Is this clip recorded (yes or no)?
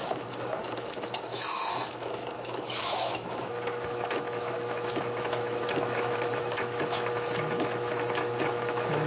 no